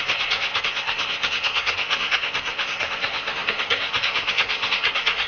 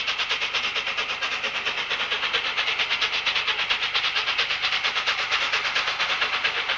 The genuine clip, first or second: second